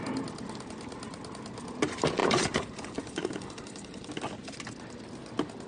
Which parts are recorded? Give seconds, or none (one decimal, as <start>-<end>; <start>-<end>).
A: 0.0-2.2; 4.1-5.7